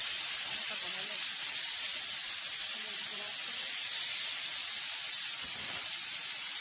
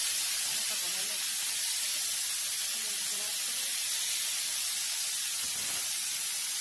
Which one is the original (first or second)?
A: second